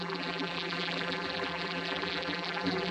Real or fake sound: fake